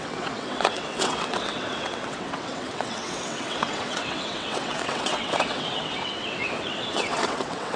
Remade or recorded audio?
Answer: remade